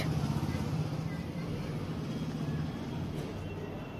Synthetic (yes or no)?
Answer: no